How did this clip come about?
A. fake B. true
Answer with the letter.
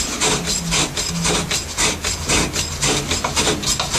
B